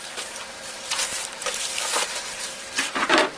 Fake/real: fake